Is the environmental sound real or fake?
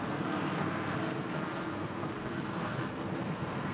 fake